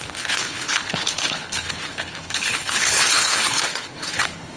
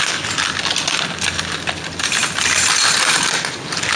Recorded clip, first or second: second